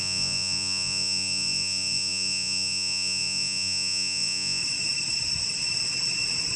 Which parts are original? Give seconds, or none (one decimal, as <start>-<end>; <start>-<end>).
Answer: 4.6-6.6